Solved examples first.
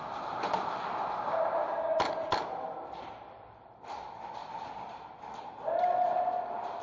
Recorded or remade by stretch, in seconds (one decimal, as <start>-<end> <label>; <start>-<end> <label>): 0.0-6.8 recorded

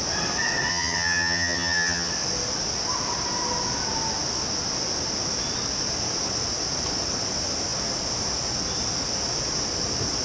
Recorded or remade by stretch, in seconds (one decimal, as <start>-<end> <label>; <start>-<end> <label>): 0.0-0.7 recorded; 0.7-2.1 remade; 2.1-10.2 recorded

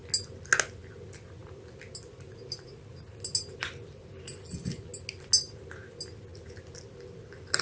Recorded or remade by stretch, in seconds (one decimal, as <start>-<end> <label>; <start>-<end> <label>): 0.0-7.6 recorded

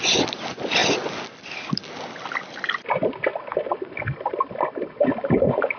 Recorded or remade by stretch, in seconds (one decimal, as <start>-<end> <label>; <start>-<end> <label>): 0.0-5.8 recorded

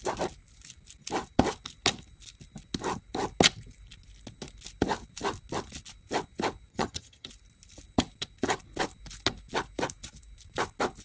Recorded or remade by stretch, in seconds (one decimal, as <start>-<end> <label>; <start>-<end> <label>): 0.0-6.7 recorded; 6.7-7.3 remade; 7.3-11.0 recorded